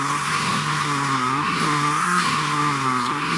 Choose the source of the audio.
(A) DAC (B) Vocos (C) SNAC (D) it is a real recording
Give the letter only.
C